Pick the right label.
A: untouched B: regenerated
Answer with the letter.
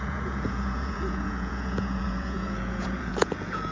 B